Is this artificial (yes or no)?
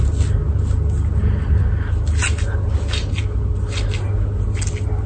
no